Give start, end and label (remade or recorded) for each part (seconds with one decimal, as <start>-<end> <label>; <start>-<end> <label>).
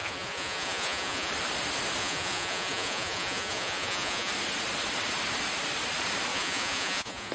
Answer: 0.0-1.3 remade; 1.3-2.0 recorded; 2.0-4.3 remade; 4.3-6.3 recorded; 6.3-7.3 remade